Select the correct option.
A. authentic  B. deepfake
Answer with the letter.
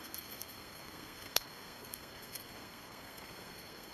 B